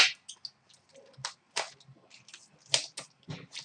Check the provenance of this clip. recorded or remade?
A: recorded